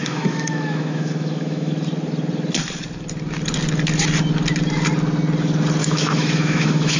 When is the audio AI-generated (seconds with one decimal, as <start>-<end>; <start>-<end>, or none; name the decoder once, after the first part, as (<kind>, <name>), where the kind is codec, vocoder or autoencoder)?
0.0-1.7 (autoencoder, DAC-VAE); 5.8-7.0